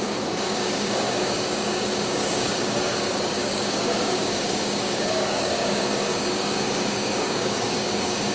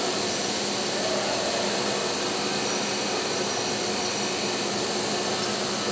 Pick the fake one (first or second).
first